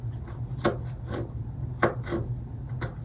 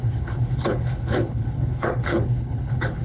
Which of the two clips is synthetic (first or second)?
second